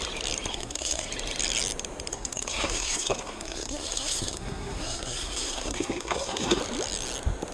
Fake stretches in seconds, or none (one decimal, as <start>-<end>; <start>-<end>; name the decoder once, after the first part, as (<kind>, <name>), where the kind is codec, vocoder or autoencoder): 0.5-1.1 (codec, SNAC); 2.1-6.6